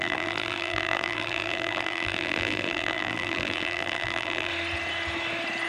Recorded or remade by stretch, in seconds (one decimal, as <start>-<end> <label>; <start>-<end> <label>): 0.0-4.5 remade; 4.5-5.7 recorded